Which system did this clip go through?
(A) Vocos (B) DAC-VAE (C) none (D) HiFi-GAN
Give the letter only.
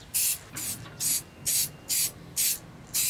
C